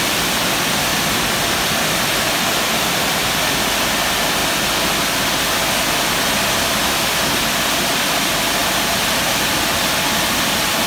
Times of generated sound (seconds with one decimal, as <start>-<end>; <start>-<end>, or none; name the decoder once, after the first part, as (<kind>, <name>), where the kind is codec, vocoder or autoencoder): 0.9-3.6 (vocoder, BigVGAN v2)